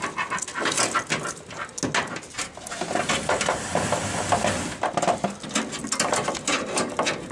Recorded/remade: recorded